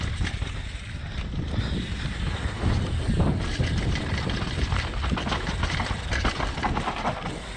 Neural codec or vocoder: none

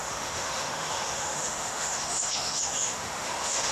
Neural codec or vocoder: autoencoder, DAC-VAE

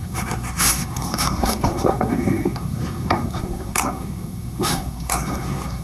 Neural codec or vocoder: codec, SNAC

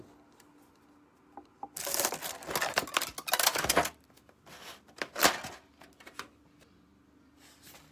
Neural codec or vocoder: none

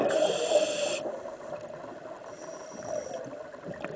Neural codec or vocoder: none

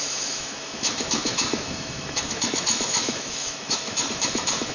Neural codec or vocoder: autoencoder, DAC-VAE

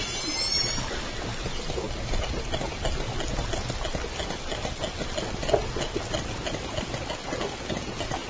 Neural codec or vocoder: none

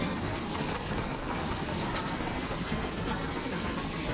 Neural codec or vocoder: codec, SNAC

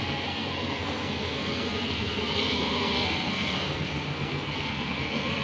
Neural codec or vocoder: codec, SNAC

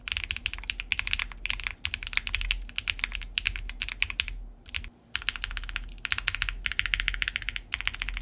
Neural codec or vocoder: none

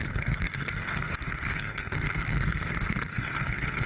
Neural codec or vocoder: codec, SNAC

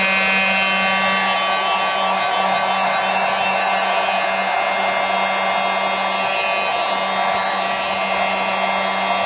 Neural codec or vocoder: none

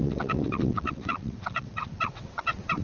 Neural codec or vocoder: vocoder, WaveNeXt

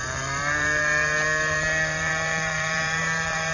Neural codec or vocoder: vocoder, BigVGAN v2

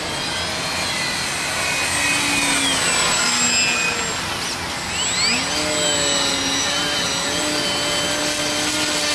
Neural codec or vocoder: none